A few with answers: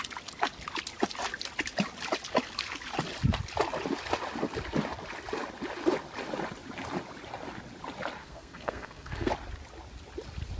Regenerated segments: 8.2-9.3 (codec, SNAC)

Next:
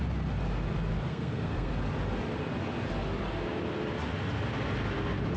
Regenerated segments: 1.1-1.7 (codec, SNAC)

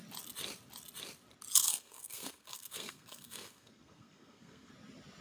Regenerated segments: 1.6-4.7 (codec, SNAC)

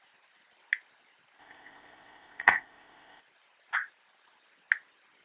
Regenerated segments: 1.4-3.2 (codec, ZipCodec)

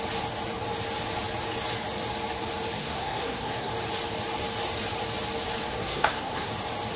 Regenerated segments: 2.8-3.7 (codec, SNAC); 5.7-6.5